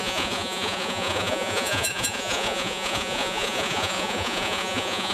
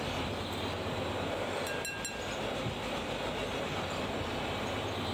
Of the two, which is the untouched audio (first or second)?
second